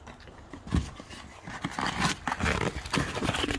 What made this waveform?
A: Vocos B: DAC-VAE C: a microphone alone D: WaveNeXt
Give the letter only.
C